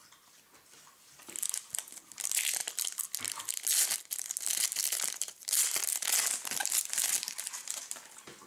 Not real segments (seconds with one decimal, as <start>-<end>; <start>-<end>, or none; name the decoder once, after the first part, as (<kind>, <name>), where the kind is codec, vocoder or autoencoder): none